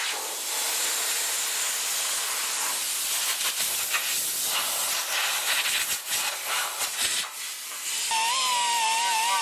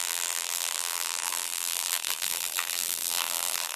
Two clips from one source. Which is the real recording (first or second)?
first